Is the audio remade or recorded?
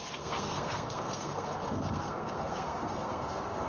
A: remade